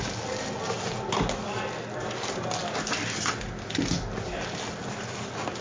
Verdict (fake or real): real